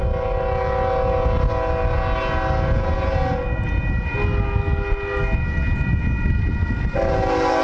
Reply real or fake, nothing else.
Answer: real